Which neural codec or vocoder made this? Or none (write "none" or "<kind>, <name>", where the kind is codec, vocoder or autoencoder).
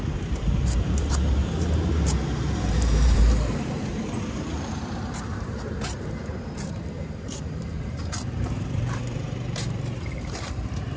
vocoder, BigVGAN v2